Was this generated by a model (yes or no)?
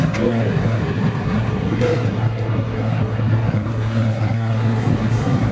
yes